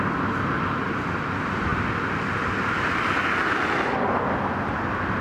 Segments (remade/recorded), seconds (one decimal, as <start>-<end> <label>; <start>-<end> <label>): 0.0-5.2 recorded

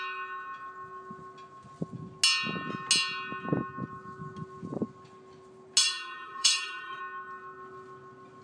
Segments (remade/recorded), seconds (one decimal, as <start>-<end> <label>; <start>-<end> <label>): 0.0-5.8 recorded; 5.8-7.0 remade; 7.0-8.4 recorded

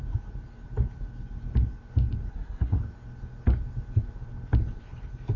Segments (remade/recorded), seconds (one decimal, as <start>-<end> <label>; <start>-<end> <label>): 0.0-2.3 recorded; 2.3-2.8 remade; 2.8-5.4 recorded

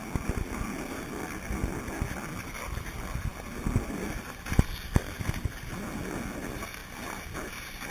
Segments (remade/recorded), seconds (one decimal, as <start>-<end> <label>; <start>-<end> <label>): 0.0-7.9 recorded

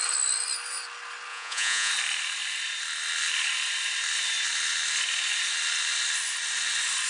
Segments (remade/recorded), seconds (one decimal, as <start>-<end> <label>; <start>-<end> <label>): 0.0-1.3 recorded; 1.3-1.9 remade; 1.9-7.1 recorded

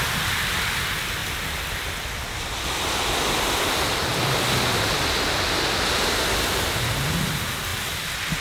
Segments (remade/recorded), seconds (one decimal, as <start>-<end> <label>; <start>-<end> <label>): 0.0-8.4 recorded

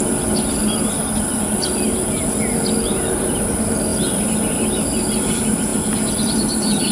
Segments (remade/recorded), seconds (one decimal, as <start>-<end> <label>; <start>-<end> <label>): 0.0-5.7 recorded; 5.7-6.9 remade

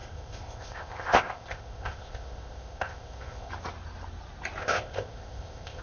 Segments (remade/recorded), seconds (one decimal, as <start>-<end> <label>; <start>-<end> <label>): 0.0-3.5 remade; 3.5-4.6 recorded; 4.6-5.8 remade